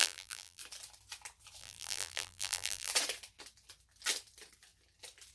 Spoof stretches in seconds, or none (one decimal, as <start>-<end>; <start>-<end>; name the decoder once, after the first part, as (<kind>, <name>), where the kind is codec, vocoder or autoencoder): 0.0-0.6 (vocoder, BigVGAN v2); 1.6-2.9